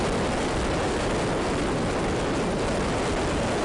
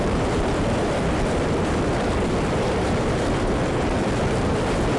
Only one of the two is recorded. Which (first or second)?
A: first